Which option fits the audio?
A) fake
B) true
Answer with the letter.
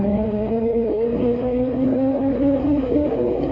A